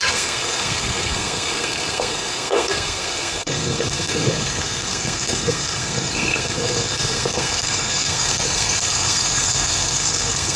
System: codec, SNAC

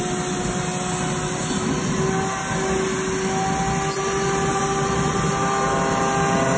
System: none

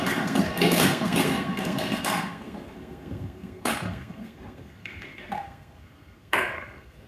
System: codec, SNAC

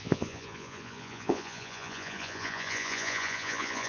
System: vocoder, Vocos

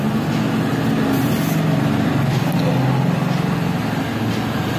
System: none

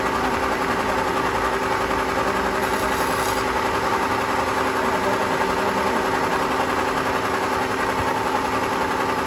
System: none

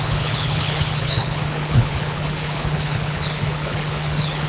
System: codec, HILCodec